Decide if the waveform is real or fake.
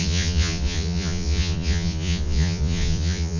fake